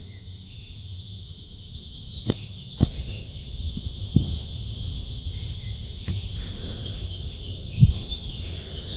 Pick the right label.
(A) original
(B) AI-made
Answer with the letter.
B